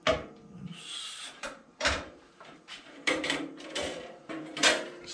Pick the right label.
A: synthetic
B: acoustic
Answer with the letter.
A